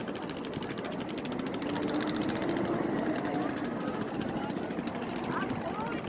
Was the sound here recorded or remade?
recorded